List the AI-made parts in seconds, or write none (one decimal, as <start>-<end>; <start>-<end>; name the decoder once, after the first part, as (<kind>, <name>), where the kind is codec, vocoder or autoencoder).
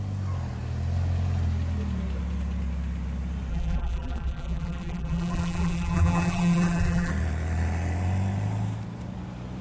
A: 3.5-7.1 (vocoder, BigVGAN v2)